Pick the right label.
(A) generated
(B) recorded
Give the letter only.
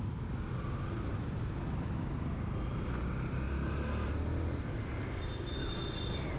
B